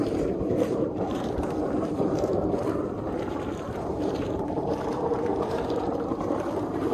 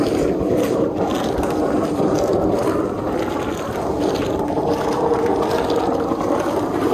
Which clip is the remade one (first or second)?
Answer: first